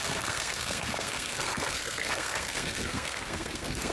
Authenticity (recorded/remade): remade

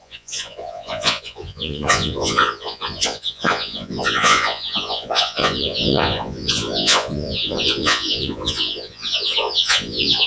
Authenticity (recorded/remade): remade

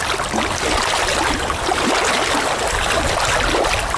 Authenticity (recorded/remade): recorded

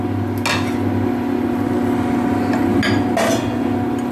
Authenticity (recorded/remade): recorded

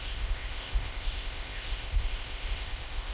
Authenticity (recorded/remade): remade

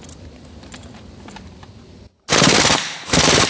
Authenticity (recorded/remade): recorded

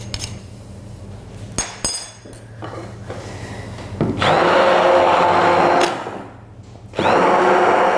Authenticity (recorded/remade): recorded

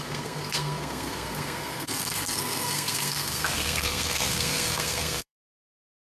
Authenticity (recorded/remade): remade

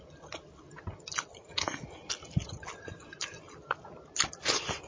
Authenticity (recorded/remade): recorded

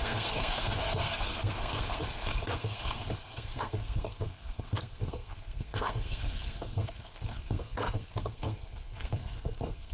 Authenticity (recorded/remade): remade